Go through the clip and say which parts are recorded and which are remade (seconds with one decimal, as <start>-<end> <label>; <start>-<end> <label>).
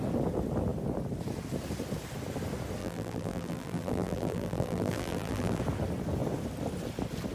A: 0.0-2.8 recorded; 2.8-5.6 remade; 5.6-7.3 recorded